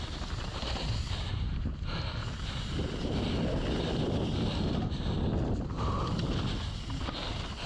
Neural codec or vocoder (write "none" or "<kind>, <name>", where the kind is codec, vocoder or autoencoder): none